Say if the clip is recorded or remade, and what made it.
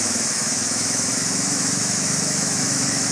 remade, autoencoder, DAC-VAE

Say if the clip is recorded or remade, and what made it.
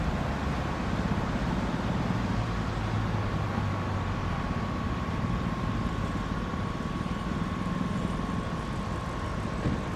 recorded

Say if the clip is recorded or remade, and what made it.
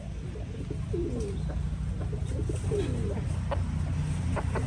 recorded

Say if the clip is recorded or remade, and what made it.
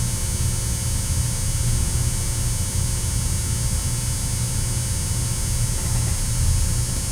recorded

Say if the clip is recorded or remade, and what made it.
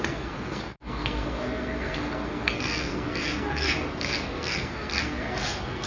remade, codec, SNAC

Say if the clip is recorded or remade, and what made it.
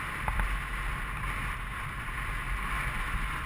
recorded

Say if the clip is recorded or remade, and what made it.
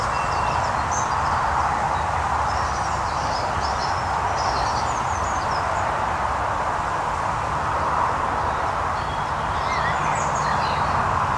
recorded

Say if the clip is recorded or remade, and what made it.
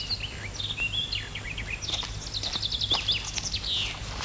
recorded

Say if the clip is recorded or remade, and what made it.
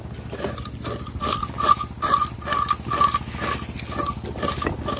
recorded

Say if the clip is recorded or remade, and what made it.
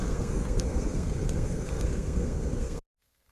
remade, codec, SNAC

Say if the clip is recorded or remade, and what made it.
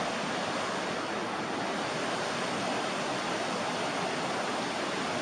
recorded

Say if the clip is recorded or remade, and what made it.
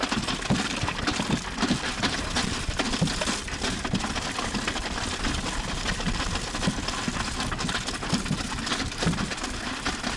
recorded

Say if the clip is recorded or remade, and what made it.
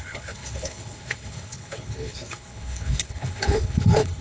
remade, codec, HILCodec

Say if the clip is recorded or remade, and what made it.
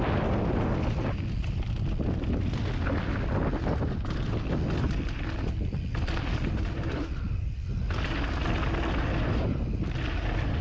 recorded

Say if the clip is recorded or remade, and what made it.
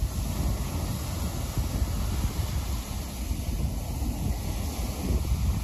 recorded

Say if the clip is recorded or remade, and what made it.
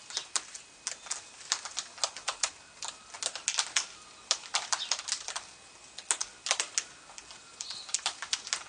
recorded